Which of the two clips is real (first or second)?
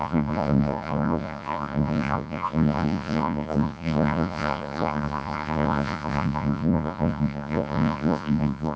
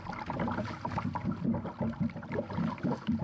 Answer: second